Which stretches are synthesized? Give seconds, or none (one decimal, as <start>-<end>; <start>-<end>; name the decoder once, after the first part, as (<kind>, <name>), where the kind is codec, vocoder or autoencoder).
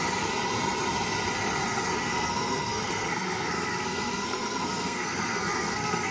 2.1-6.1 (codec, SNAC)